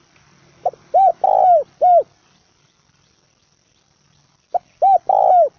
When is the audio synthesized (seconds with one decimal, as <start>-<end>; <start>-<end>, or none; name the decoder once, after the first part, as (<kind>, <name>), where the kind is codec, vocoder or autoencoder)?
none